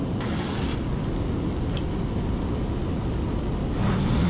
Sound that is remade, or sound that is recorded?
recorded